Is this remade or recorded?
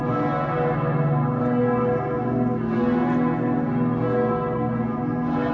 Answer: recorded